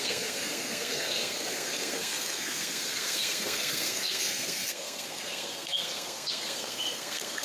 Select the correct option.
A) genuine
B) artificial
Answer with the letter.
B